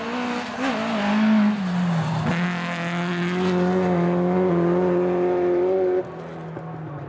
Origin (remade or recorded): recorded